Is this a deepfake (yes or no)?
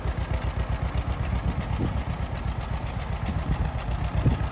no